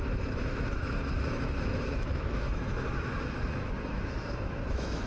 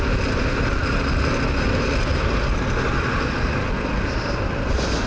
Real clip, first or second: second